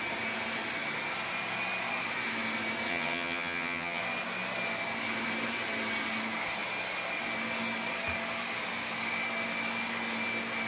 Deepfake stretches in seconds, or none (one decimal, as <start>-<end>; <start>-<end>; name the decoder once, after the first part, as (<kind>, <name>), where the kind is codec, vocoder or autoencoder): 2.9-4.0 (vocoder, HiFi-GAN)